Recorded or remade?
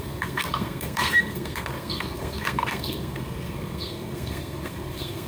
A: remade